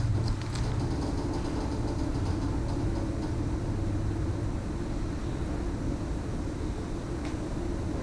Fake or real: real